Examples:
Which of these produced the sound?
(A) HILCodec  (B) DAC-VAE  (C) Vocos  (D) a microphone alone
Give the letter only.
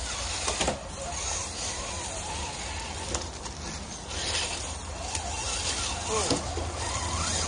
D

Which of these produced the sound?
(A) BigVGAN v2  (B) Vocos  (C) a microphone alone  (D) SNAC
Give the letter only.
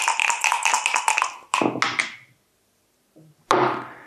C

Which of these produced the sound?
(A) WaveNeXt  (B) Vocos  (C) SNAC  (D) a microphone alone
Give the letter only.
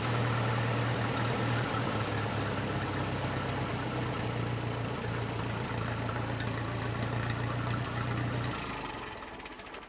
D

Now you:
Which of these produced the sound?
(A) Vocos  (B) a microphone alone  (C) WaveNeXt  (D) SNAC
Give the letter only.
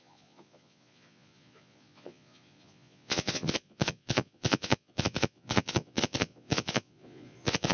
A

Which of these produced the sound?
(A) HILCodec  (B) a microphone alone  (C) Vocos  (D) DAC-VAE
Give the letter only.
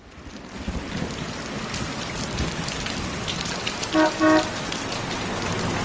B